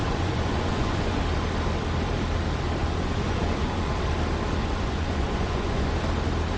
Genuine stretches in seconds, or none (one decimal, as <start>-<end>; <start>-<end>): 1.2-2.8; 3.9-4.6; 5.9-6.6